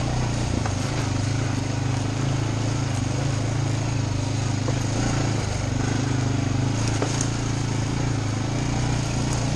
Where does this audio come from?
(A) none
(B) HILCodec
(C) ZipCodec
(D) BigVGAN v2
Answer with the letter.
A